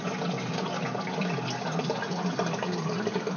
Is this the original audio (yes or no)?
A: yes